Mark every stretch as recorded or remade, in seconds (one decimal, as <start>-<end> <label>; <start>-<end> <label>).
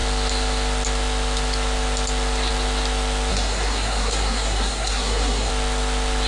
0.0-3.3 recorded; 3.3-5.5 remade; 5.5-6.3 recorded